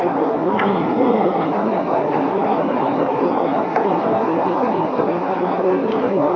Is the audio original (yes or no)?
no